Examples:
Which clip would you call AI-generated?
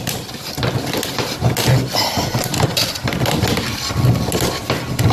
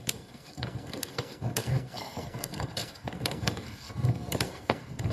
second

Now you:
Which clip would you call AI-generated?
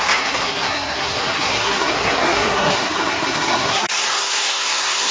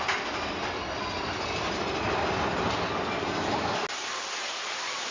first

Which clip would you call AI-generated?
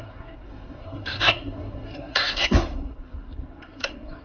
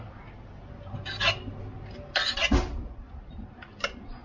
first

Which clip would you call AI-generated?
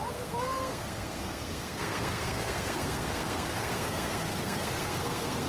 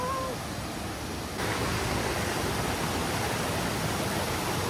first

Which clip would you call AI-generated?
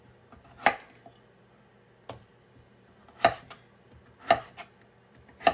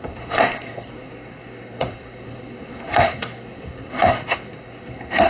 second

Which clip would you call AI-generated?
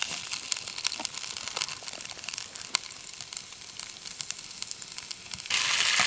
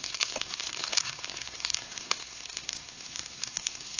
second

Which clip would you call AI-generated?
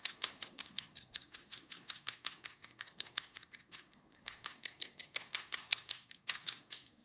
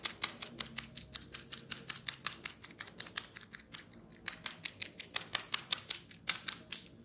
first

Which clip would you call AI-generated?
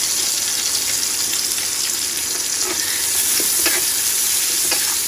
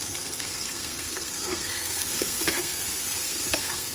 second